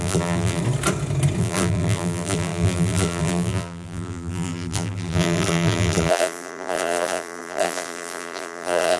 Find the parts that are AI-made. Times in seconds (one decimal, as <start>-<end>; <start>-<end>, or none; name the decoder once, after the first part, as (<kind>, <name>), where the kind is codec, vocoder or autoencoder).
0.0-0.6 (vocoder, BigVGAN v2); 1.4-9.0